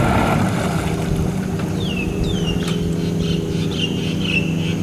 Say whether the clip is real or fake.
real